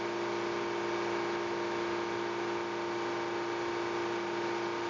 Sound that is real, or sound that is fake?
real